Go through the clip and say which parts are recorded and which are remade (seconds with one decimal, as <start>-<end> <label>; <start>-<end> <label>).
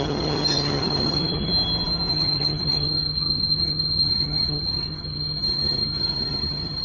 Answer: 0.0-1.5 remade; 1.5-2.1 recorded; 2.1-6.8 remade